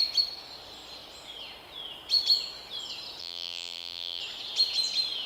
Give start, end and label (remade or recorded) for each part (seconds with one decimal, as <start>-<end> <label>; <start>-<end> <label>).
0.0-3.2 recorded; 3.2-4.2 remade; 4.2-5.3 recorded